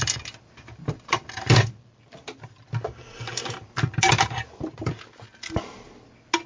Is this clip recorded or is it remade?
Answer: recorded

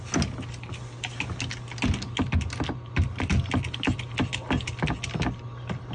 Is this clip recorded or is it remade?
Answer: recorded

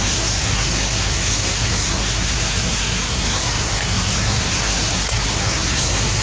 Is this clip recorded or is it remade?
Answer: remade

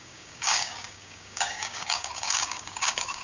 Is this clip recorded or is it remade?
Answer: remade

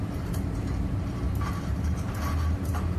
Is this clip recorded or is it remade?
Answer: remade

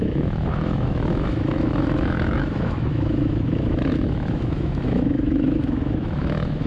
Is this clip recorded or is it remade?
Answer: remade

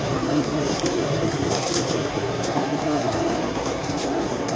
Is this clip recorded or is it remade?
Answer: remade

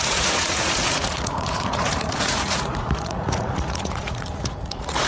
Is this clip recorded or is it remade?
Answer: remade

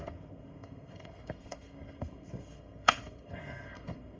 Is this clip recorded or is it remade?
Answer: remade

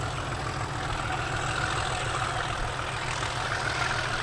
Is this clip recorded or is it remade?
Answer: recorded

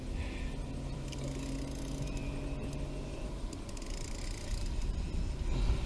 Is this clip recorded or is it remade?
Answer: recorded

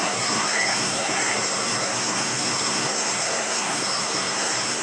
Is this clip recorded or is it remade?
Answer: remade